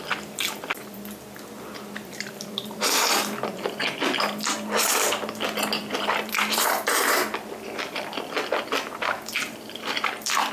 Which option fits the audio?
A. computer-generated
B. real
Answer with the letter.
A